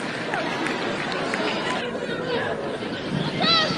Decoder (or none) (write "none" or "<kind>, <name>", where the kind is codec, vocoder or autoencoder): none